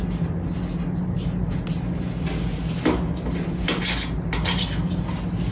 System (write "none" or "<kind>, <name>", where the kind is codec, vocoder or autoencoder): none